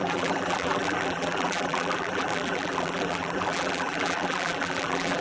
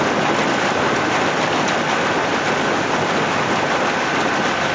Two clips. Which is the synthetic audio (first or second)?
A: first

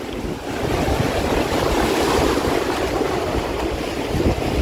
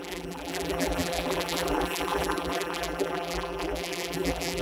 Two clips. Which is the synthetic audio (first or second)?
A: second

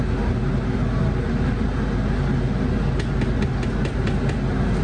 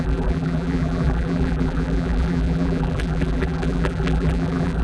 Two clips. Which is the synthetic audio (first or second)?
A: second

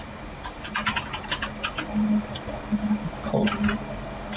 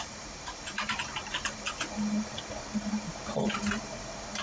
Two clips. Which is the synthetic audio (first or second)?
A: second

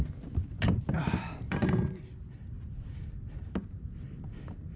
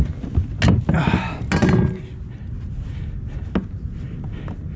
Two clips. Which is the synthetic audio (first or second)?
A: first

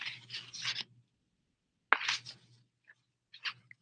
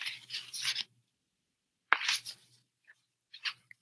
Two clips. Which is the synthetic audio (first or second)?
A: second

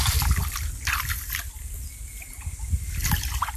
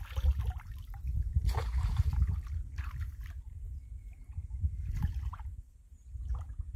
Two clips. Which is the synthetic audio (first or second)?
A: second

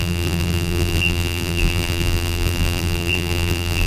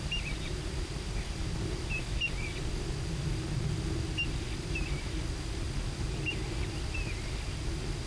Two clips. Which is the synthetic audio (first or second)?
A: first